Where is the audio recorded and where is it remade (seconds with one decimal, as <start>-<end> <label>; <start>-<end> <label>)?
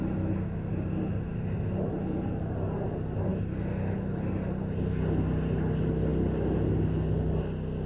0.0-7.9 recorded